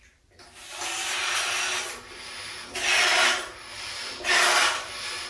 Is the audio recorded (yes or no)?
yes